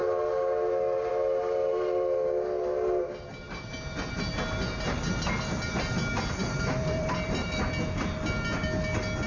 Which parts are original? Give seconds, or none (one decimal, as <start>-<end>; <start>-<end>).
0.0-6.4; 7.6-9.3